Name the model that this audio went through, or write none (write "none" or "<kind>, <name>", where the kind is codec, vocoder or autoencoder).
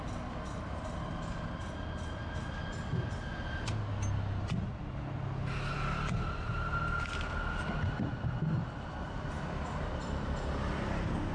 none